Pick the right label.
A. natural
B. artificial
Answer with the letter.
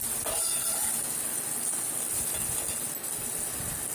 A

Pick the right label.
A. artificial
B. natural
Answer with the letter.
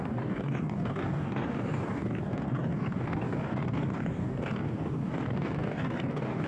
A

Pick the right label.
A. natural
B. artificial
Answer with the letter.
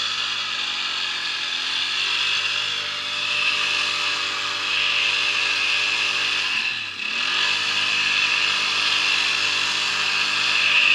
A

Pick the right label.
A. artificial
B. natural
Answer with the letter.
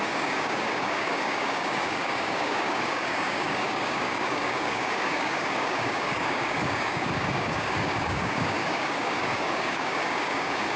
A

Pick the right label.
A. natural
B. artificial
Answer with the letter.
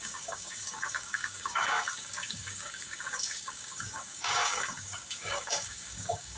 B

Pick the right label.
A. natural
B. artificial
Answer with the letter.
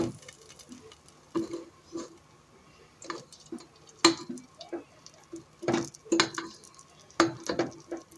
A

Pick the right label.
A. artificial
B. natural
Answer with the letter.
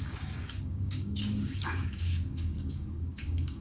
A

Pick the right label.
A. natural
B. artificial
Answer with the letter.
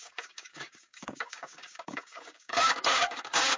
B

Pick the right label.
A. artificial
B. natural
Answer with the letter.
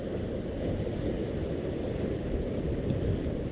B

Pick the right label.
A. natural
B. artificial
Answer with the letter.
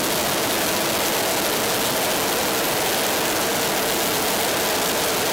A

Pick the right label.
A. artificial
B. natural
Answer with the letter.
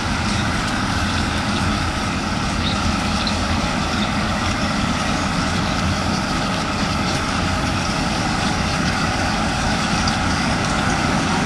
A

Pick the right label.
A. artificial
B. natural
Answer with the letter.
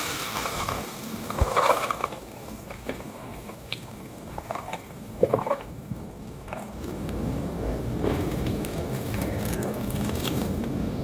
A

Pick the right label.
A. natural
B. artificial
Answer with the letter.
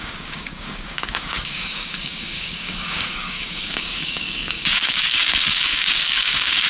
B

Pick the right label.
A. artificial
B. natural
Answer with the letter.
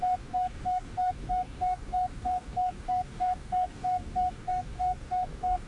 A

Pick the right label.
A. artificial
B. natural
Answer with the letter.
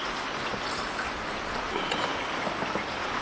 B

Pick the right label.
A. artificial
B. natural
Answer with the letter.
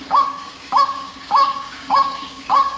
A